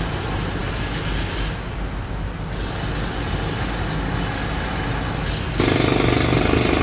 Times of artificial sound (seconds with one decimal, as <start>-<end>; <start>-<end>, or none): none

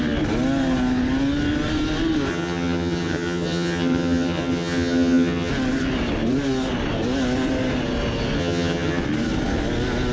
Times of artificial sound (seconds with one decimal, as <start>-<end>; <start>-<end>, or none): 2.3-5.5; 8.4-9.0